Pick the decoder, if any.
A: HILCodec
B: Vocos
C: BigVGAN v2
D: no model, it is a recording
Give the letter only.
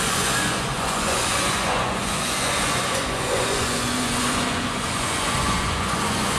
B